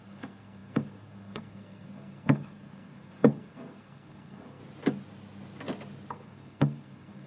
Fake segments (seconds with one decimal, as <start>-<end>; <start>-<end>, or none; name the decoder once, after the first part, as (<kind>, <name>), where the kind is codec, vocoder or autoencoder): 0.0-4.6 (codec, SNAC); 6.1-7.3